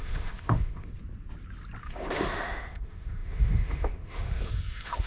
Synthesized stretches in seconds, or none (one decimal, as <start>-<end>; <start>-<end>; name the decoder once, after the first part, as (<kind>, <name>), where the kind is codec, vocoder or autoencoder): 0.0-0.9 (autoencoder, DAC-VAE); 1.8-5.1